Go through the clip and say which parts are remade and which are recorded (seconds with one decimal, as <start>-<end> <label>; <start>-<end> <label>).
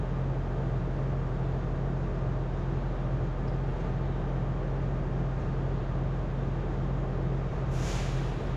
0.0-7.5 recorded; 7.5-8.6 remade